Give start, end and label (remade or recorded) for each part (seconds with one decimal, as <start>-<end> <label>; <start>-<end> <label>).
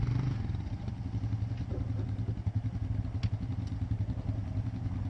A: 0.0-5.1 recorded